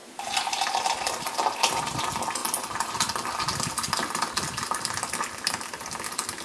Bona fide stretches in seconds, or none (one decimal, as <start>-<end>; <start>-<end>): 2.0-6.4